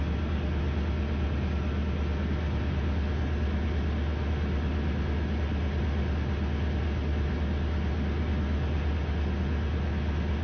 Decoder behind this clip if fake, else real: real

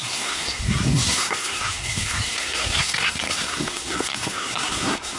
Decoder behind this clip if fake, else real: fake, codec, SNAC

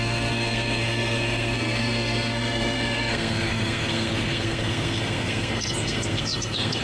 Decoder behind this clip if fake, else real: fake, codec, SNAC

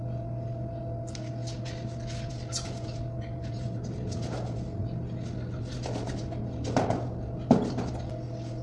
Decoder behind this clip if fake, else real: real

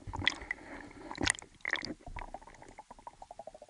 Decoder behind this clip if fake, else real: real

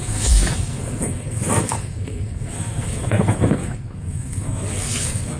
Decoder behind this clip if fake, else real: fake, codec, SNAC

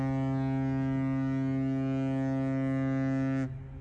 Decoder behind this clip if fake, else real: real